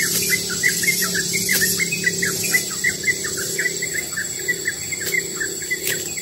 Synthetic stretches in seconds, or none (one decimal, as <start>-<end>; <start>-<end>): none